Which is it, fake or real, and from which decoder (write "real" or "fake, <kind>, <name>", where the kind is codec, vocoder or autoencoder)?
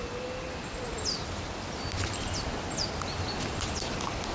real